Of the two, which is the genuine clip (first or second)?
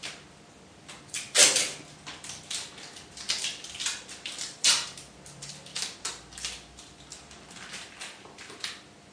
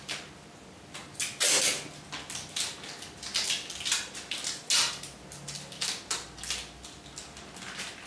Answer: second